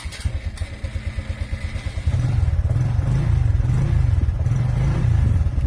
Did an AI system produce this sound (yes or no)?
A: no